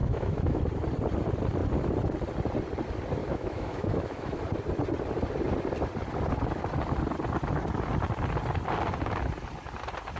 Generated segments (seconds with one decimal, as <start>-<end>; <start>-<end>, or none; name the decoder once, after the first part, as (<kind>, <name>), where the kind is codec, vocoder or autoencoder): 0.0-0.6 (autoencoder, DAC-VAE); 3.2-4.4